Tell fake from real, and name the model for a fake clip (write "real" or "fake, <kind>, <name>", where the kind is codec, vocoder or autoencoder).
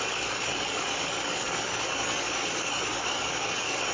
fake, codec, DAC